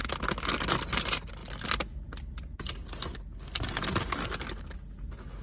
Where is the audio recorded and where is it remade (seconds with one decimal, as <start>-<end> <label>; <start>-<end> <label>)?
0.0-5.4 recorded